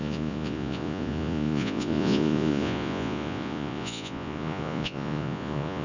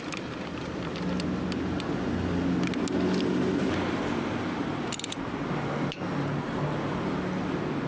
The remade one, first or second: first